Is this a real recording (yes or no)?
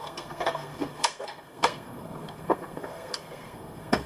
no